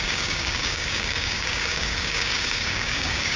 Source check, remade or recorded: remade